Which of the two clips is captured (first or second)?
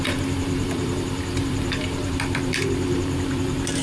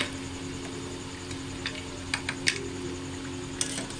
second